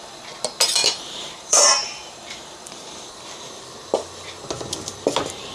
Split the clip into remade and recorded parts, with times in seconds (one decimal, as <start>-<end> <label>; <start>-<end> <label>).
0.0-0.8 recorded; 0.8-3.2 remade; 3.2-5.5 recorded